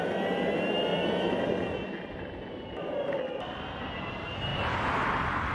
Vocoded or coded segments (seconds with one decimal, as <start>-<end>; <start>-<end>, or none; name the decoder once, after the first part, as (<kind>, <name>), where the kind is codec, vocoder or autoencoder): 0.9-3.2 (vocoder, BigVGAN v2); 4.5-5.5